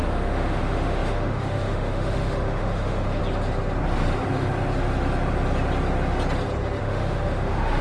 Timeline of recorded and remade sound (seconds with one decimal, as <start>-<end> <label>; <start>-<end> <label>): 0.0-3.2 remade; 3.2-6.8 recorded; 6.8-7.8 remade